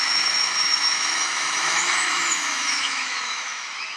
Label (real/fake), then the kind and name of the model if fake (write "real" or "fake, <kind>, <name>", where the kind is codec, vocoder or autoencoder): fake, autoencoder, DAC-VAE